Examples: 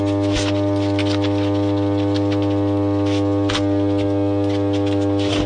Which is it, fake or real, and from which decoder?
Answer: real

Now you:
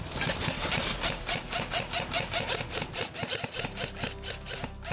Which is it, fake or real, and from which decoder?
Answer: real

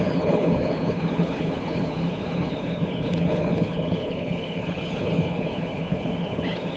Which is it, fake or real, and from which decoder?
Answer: fake, codec, HILCodec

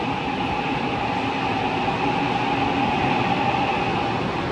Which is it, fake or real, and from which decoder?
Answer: real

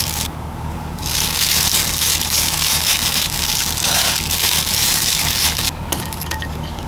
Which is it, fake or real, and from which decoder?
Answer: fake, codec, DAC